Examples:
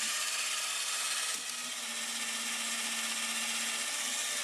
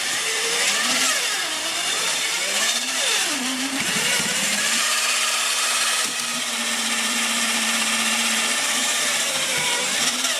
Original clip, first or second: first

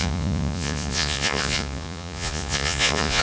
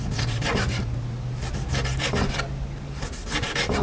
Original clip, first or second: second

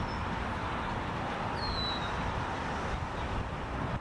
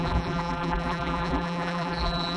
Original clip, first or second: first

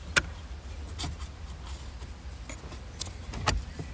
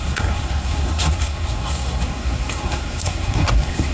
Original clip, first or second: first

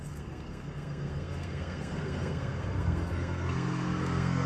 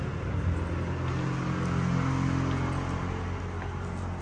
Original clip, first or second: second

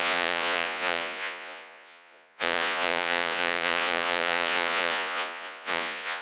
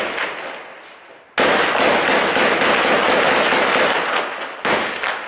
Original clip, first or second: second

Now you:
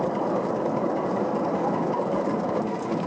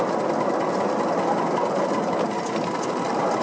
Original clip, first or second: second